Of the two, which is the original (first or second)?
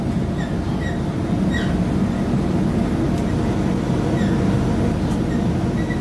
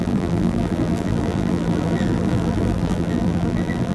first